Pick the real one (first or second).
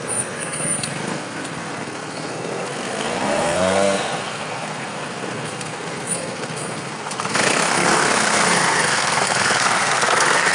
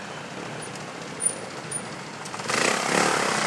second